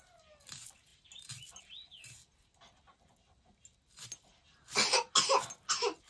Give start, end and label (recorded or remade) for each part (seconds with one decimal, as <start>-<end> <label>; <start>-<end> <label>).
0.0-6.1 recorded